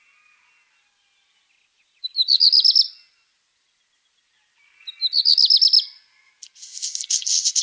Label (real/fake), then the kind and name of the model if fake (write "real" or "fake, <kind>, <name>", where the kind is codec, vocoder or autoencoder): real